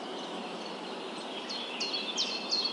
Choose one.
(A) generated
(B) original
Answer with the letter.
B